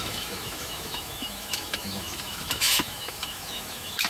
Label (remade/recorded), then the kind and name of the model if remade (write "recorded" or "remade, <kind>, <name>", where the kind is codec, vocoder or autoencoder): remade, autoencoder, DAC-VAE